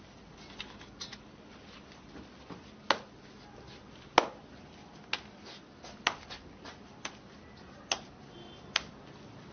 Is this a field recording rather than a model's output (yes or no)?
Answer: yes